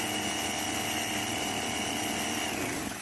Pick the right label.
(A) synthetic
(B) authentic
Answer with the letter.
B